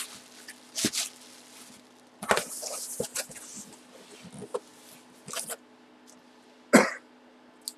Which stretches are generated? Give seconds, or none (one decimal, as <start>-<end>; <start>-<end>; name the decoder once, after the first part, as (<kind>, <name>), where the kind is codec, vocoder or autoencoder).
none